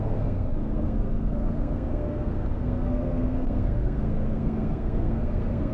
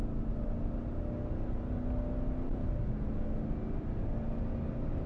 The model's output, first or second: first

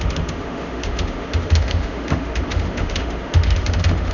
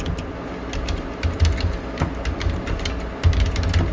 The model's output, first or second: first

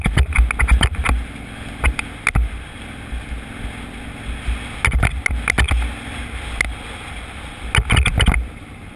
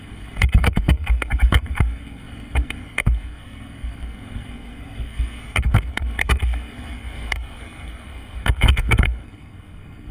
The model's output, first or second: second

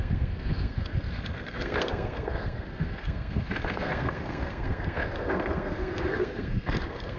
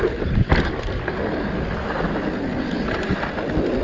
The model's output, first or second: first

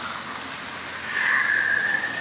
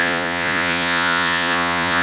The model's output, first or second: second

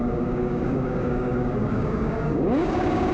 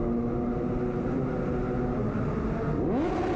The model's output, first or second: first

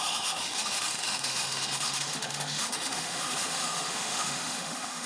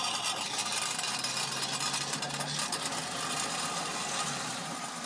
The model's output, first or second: first